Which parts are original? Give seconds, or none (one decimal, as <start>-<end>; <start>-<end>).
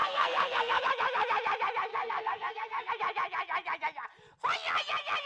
0.8-1.9; 2.9-5.3